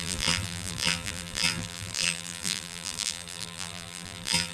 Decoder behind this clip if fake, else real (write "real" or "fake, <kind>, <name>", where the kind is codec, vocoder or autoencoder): fake, vocoder, BigVGAN v2